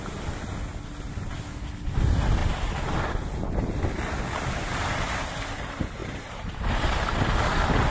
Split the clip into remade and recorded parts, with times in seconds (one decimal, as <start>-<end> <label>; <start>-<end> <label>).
0.0-6.0 recorded; 6.0-6.8 remade; 6.8-7.9 recorded